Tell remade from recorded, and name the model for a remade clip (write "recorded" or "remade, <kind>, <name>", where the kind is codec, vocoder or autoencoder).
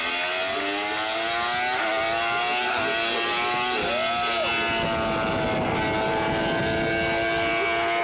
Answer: recorded